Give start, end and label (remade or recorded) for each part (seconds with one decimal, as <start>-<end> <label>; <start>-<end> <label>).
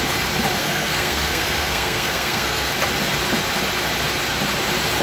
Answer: 0.0-0.6 recorded; 0.6-2.7 remade; 2.7-5.0 recorded